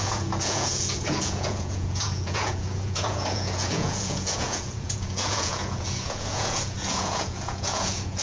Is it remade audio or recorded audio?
remade